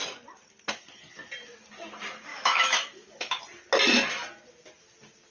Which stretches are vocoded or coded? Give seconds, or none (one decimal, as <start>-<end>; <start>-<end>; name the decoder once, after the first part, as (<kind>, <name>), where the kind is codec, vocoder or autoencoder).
2.3-3.4 (autoencoder, DAC-VAE)